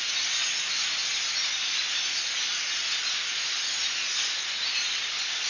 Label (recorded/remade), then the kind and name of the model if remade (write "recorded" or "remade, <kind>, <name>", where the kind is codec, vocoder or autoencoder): recorded